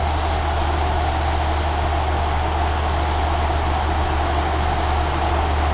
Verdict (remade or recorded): recorded